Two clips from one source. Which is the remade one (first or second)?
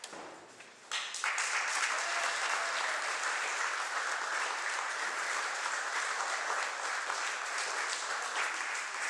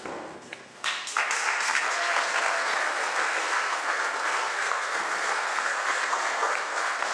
second